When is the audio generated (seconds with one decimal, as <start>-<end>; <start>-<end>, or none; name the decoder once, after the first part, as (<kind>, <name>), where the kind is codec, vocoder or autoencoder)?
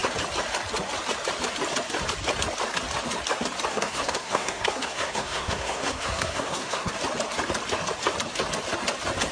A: 3.7-6.9 (codec, SNAC)